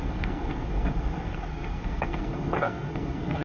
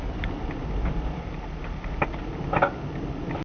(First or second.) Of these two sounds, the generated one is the first